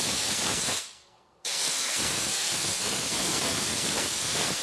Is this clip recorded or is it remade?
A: remade